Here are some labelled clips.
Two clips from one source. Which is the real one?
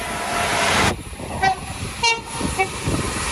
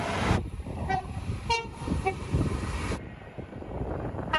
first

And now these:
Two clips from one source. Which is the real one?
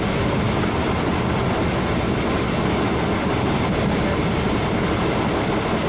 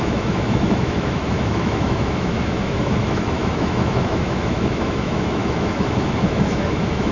first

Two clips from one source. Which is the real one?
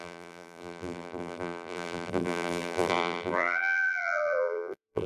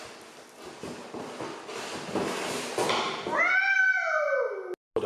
second